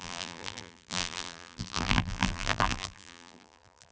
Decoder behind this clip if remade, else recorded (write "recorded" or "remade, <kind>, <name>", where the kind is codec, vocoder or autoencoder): remade, vocoder, BigVGAN v2